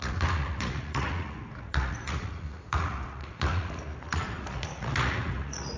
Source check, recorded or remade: remade